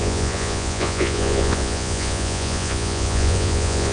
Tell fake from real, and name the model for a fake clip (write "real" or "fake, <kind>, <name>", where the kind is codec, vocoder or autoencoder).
fake, vocoder, Vocos